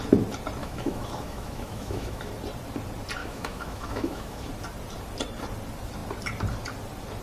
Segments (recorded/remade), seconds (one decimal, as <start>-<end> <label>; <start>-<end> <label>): 0.0-0.6 recorded; 0.6-2.3 remade; 2.3-3.2 recorded; 3.2-4.5 remade; 4.5-7.2 recorded